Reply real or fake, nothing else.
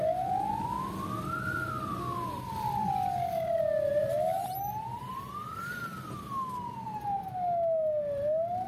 real